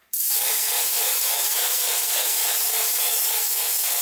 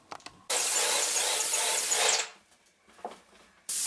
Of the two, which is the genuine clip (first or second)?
second